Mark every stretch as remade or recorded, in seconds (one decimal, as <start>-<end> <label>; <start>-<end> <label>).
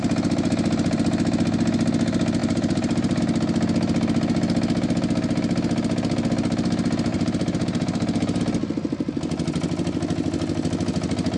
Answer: 0.0-2.4 recorded; 2.4-3.2 remade; 3.2-7.1 recorded; 7.1-8.4 remade; 8.4-11.4 recorded